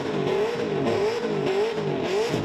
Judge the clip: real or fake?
real